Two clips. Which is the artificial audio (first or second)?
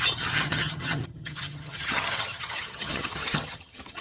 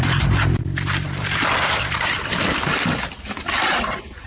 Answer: first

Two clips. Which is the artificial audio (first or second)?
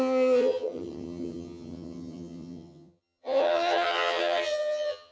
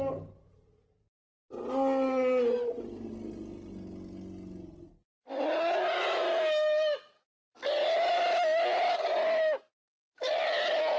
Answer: first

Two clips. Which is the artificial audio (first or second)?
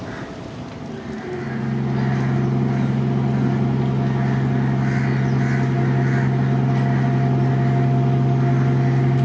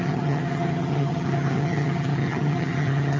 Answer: second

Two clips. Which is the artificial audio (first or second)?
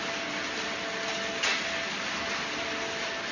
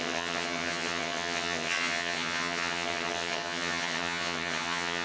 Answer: second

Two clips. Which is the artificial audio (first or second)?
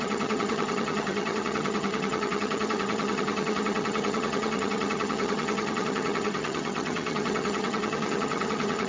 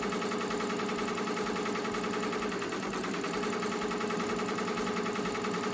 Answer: first